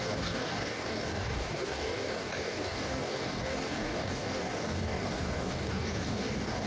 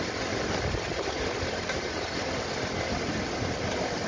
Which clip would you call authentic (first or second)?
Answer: second